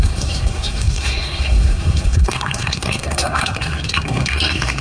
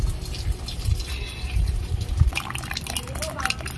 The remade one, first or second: first